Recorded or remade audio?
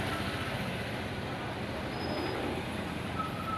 recorded